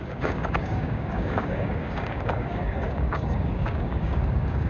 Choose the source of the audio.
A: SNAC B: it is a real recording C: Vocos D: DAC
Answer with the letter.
D